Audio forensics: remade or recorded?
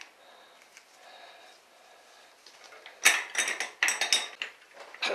recorded